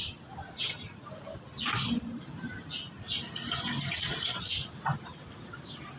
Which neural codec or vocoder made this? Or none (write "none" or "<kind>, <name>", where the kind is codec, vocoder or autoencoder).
none